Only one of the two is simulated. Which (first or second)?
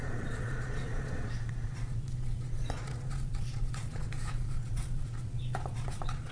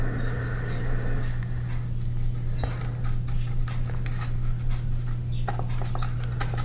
first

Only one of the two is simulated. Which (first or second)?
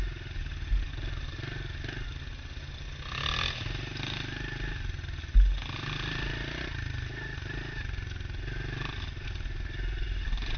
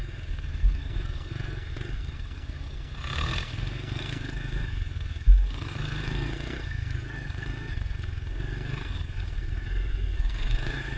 second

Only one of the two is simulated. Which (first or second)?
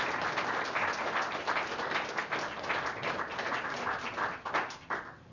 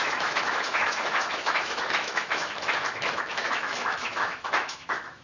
second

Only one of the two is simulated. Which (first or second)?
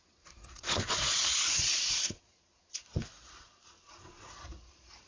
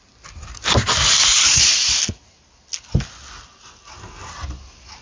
first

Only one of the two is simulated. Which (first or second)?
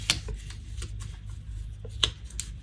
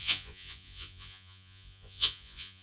second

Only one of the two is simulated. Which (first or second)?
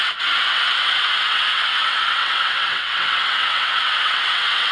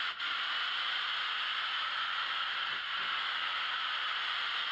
first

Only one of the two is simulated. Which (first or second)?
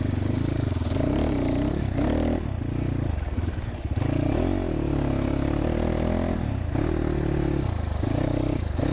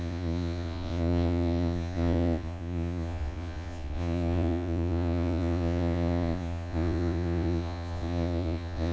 second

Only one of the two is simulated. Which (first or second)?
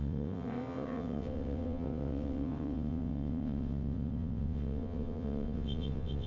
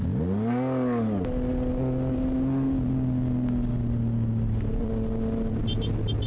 first